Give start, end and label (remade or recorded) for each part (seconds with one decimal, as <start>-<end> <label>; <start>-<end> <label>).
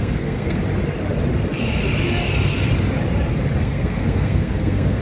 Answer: 0.0-0.6 remade; 0.6-3.6 recorded; 3.6-5.0 remade